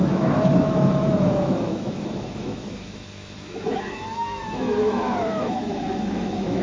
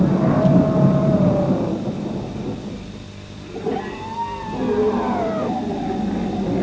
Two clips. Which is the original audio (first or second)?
second